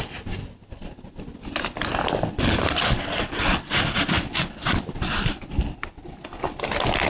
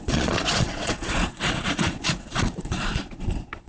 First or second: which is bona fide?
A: first